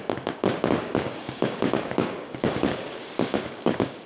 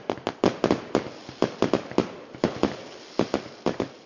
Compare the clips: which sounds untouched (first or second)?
second